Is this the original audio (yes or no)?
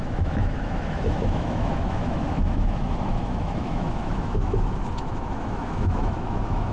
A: no